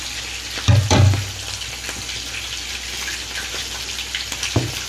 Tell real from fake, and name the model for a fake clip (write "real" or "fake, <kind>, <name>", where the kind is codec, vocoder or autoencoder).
real